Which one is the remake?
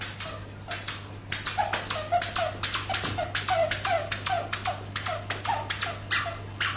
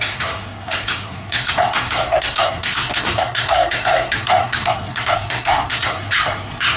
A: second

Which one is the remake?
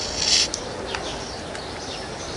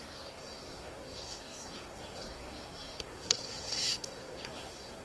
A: second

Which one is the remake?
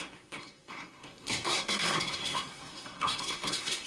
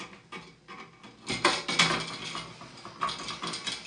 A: first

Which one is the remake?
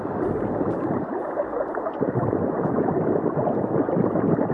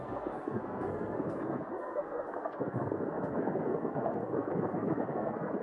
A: second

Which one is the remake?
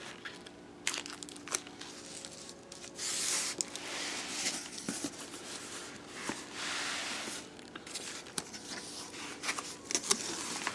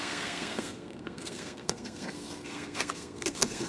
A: second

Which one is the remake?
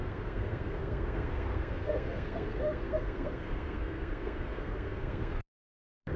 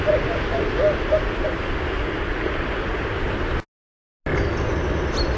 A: first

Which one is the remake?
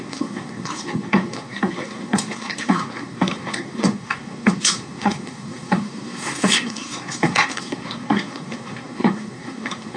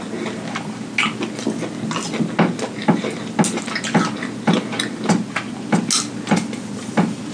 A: first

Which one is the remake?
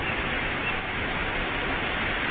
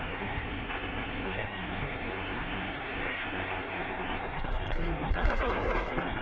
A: second